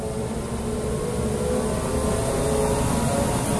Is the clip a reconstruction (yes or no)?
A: no